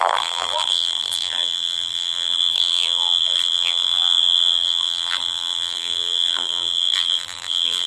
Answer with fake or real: fake